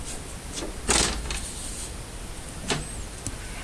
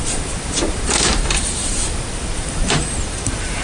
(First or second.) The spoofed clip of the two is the second